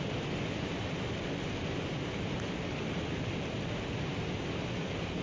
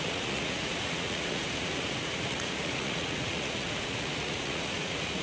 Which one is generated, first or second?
second